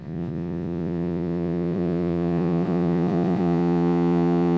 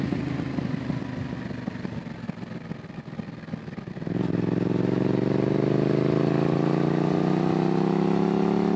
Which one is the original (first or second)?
second